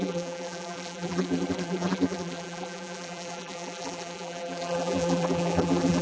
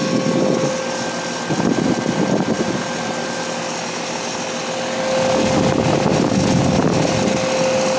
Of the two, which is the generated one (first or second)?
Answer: first